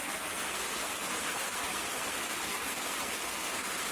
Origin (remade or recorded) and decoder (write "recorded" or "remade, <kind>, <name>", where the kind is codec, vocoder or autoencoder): remade, codec, SNAC